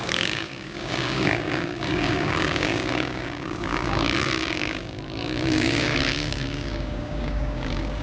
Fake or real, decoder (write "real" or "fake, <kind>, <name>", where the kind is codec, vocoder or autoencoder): fake, codec, DAC